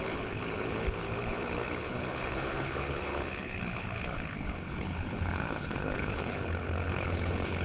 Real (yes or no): no